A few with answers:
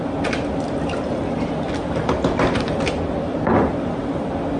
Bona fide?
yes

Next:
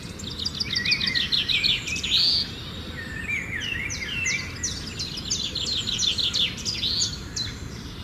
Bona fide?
yes